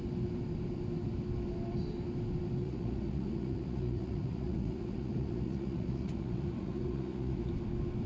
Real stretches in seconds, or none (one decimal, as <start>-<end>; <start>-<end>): 0.0-2.6; 7.5-8.1

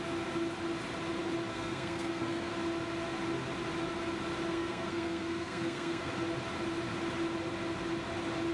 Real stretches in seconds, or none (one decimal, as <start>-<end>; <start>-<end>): 0.0-1.5; 2.5-4.5; 6.1-8.5

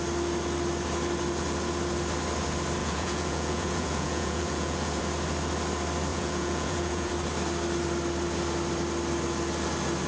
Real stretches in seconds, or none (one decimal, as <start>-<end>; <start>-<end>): 0.0-2.8; 5.0-6.1; 7.1-10.1

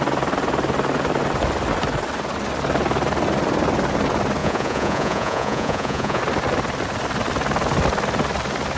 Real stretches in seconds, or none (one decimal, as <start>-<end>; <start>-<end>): 0.0-4.4; 6.2-8.8

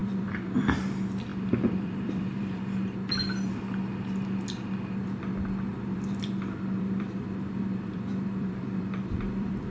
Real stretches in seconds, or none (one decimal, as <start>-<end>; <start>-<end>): 0.8-1.3; 2.6-5.7

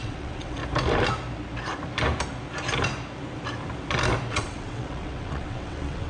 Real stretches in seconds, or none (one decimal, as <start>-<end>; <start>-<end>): 0.6-4.3

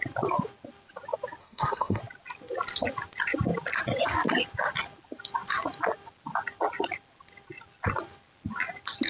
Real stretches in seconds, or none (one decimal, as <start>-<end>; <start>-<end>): 0.0-1.4; 2.0-9.1